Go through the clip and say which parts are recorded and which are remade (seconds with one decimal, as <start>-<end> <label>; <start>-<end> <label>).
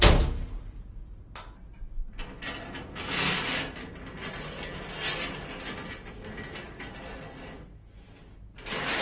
0.0-9.0 recorded